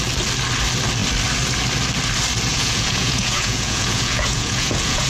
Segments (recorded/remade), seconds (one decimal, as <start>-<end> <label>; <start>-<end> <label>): 0.0-2.5 recorded; 2.5-5.1 remade